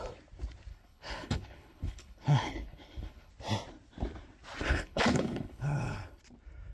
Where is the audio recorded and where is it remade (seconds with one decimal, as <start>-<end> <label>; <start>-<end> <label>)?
0.0-0.7 recorded; 0.7-3.3 remade; 3.3-4.6 recorded; 4.6-6.2 remade; 6.2-6.7 recorded